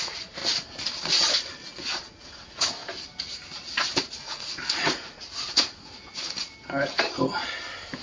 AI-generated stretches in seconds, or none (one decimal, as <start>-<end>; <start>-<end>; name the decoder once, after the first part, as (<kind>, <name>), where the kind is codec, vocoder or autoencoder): 0.0-0.4 (vocoder, Vocos); 2.1-2.8; 4.0-6.5